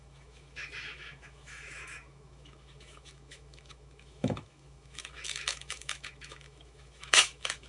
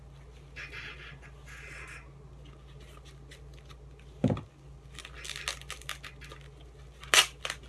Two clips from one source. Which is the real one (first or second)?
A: second